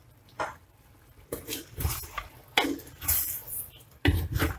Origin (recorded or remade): recorded